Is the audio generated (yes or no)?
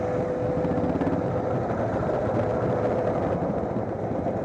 no